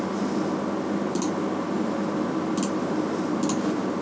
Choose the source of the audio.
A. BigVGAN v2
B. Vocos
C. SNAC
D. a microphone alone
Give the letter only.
D